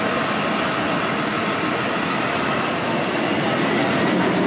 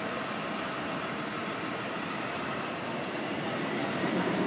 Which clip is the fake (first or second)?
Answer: second